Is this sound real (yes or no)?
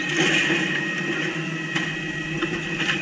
yes